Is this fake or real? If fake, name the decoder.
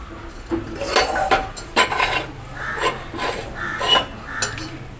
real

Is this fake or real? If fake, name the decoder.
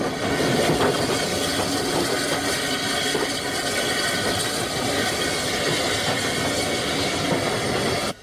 real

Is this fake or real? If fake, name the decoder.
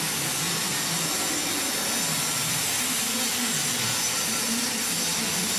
real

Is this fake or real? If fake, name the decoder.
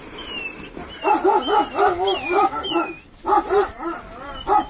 real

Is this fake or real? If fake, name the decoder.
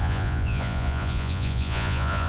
fake, vocoder, Vocos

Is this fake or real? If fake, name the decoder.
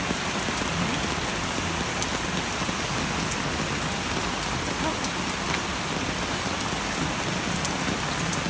real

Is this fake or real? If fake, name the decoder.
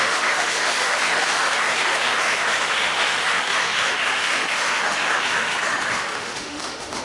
fake, autoencoder, DAC-VAE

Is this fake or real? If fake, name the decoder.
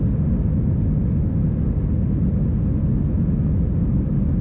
real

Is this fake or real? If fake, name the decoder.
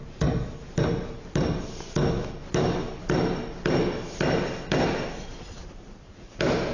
real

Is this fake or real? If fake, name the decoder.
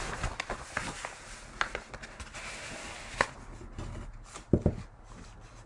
real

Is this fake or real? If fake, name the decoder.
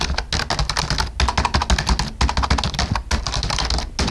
real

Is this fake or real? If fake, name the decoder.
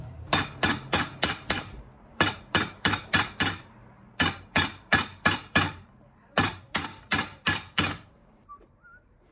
fake, vocoder, BigVGAN v2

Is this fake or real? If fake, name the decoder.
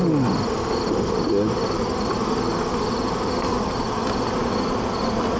real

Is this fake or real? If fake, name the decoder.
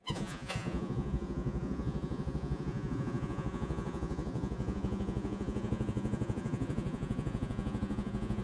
fake, vocoder, Vocos